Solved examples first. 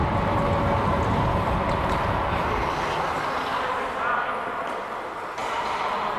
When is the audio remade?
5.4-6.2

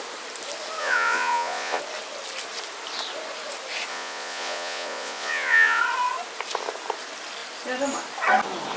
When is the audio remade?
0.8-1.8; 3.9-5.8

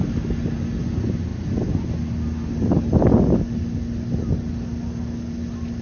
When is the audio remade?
none